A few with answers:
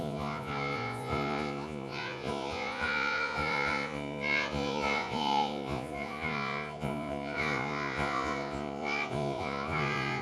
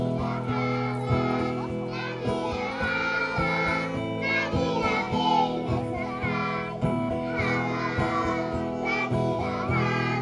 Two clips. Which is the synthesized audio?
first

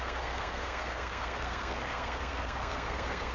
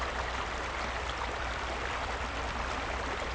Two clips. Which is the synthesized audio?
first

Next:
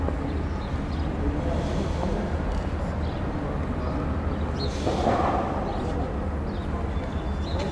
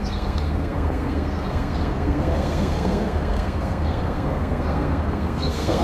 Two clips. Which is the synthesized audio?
second